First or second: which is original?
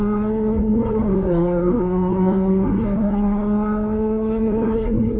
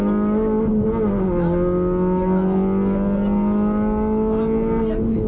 second